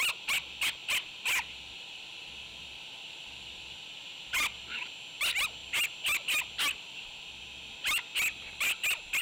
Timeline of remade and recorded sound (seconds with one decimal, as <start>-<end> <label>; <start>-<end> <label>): 0.0-9.2 recorded